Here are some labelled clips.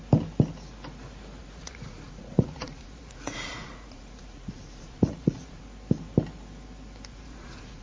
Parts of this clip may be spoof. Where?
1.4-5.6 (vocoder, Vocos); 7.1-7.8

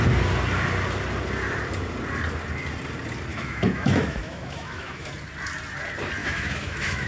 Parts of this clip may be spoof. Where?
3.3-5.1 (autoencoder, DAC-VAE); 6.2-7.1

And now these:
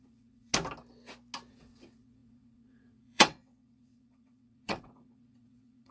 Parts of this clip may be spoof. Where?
0.0-0.5 (vocoder, WaveNeXt); 1.5-5.9

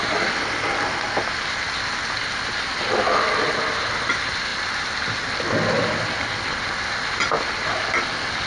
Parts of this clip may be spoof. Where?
none

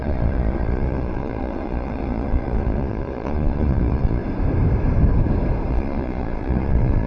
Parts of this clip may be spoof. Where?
0.0-4.2 (vocoder, Vocos); 5.7-7.1

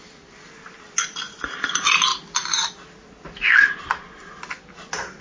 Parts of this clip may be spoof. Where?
none

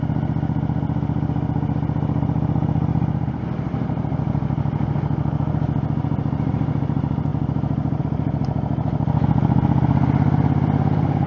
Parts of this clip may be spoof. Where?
none